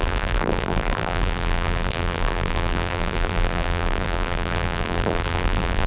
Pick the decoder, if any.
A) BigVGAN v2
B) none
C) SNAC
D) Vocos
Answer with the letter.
A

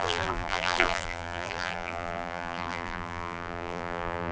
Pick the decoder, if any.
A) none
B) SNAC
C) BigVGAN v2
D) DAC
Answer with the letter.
C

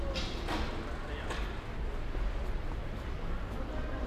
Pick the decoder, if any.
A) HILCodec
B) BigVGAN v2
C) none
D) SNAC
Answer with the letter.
C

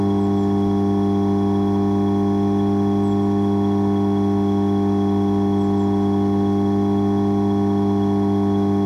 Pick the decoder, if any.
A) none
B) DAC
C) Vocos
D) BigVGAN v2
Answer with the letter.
A